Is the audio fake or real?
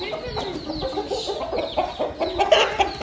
real